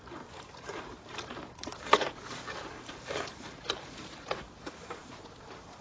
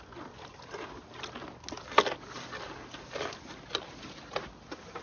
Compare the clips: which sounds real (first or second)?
second